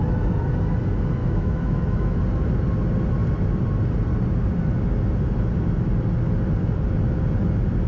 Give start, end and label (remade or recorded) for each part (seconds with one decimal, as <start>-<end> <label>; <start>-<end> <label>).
0.0-1.2 recorded; 1.2-2.2 remade; 2.2-7.9 recorded

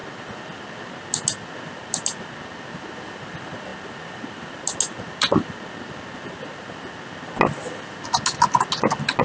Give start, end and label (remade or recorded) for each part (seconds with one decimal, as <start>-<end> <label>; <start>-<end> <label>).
0.0-9.2 recorded

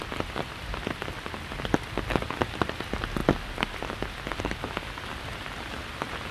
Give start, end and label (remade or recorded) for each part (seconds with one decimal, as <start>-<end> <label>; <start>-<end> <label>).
0.0-6.3 recorded

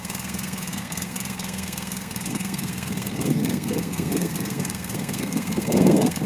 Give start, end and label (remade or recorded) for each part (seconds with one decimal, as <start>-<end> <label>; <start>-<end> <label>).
0.0-6.3 remade

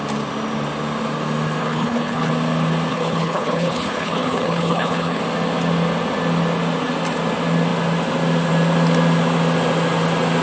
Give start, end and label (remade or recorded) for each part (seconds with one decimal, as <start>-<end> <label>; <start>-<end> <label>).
0.0-1.6 recorded; 1.6-2.3 remade; 2.3-2.9 recorded; 2.9-5.2 remade; 5.2-10.4 recorded

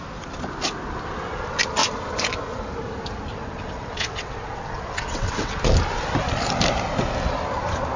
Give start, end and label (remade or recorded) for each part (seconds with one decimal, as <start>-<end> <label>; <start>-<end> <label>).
0.0-3.3 recorded; 3.3-5.5 remade; 5.5-8.0 recorded